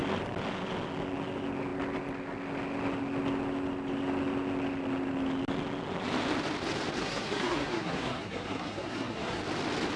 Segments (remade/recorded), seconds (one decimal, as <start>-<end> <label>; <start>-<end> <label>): 0.0-7.0 recorded; 7.0-9.4 remade; 9.4-10.0 recorded

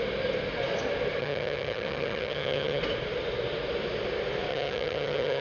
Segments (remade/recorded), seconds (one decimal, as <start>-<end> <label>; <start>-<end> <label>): 0.0-1.2 recorded; 1.2-2.8 remade; 2.8-4.5 recorded; 4.5-5.4 remade

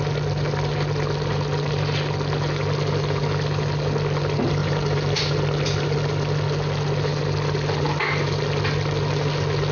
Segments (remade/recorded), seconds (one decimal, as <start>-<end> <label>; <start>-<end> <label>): 0.0-4.6 recorded; 4.6-5.2 remade; 5.2-9.7 recorded

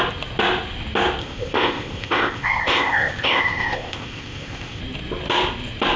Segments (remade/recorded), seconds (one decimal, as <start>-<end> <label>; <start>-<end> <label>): 0.0-1.2 recorded; 1.2-4.8 remade; 4.8-6.0 recorded

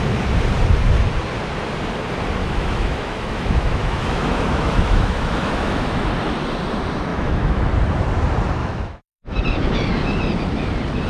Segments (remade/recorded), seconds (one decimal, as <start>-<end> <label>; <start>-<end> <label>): 0.0-2.4 recorded; 2.4-6.1 remade; 6.1-7.1 recorded; 7.1-7.7 remade; 7.7-8.6 recorded; 8.6-9.4 remade; 9.4-11.1 recorded